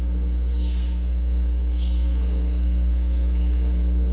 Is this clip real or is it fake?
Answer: fake